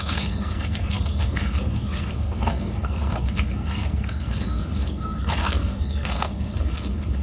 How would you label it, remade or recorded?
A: remade